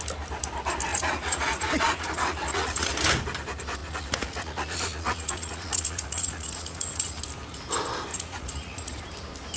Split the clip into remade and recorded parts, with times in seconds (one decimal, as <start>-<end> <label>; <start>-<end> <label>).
0.0-0.9 recorded; 0.9-2.9 remade; 2.9-3.8 recorded; 3.8-7.2 remade; 7.2-8.1 recorded; 8.1-9.0 remade; 9.0-9.6 recorded